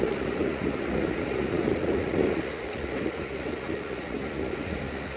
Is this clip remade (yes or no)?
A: yes